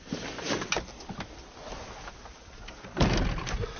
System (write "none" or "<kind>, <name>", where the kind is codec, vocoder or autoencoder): none